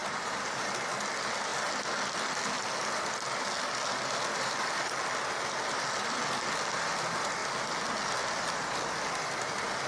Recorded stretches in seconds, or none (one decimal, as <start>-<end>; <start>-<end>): 0.7-9.9